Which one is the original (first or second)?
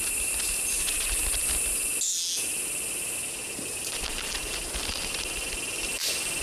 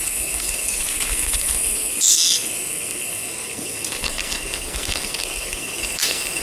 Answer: first